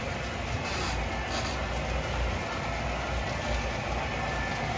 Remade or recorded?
recorded